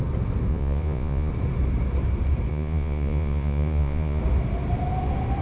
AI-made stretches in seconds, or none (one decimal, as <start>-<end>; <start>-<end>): 0.5-1.3; 2.5-4.2